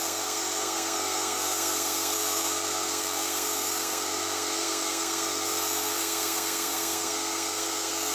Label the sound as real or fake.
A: fake